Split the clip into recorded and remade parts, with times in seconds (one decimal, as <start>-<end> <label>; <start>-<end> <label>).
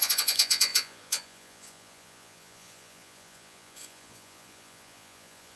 0.0-5.6 remade